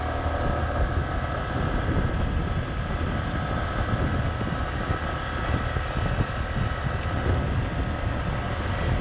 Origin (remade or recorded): recorded